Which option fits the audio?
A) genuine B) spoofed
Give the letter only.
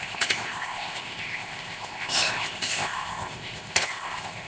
B